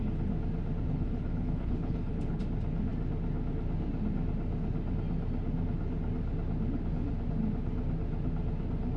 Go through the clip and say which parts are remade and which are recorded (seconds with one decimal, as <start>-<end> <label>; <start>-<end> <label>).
0.0-0.9 recorded; 0.9-2.4 remade; 2.4-9.0 recorded